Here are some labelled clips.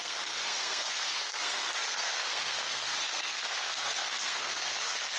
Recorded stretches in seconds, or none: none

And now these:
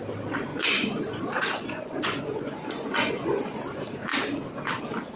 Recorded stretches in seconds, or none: 0.0-0.5; 3.6-5.2

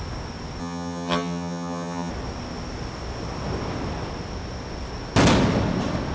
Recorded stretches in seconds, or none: 0.0-0.6; 2.1-6.1